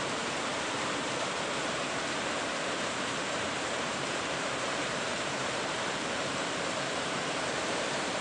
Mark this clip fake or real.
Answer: fake